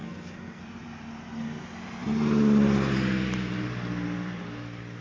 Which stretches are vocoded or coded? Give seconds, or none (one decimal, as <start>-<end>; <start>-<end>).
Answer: 0.0-0.6